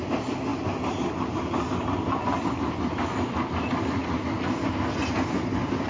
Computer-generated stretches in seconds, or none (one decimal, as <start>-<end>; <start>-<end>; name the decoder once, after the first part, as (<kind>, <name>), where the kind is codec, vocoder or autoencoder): none